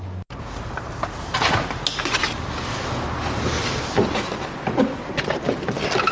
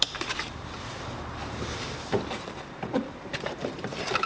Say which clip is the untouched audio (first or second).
first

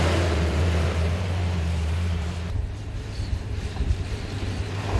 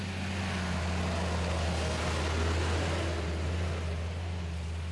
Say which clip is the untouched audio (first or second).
second